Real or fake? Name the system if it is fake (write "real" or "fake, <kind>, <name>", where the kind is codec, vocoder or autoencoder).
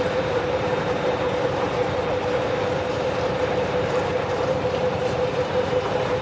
fake, vocoder, BigVGAN v2